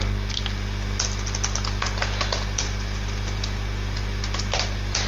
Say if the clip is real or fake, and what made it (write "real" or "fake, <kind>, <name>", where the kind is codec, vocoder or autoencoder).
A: real